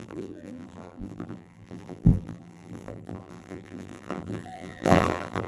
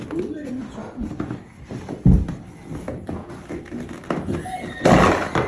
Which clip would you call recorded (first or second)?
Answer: second